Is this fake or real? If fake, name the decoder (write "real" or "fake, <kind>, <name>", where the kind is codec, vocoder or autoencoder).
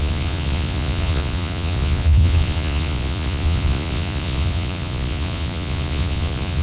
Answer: fake, vocoder, Vocos